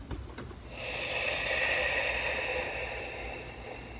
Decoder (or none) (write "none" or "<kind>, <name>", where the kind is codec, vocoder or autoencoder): none